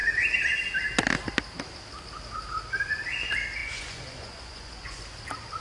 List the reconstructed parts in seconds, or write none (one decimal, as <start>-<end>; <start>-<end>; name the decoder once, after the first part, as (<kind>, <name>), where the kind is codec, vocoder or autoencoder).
3.6-5.0 (vocoder, Vocos)